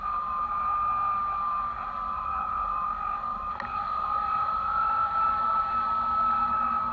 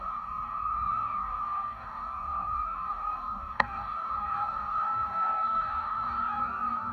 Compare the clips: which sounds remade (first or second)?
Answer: second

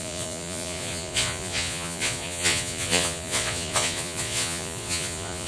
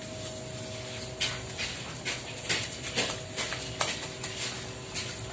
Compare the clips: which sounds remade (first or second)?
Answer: first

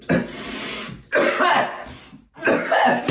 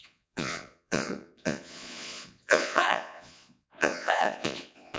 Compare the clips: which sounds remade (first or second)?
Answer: second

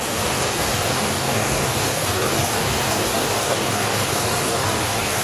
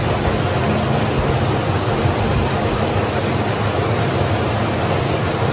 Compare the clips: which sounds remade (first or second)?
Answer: first